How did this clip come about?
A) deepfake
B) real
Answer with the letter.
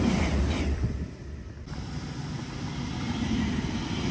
B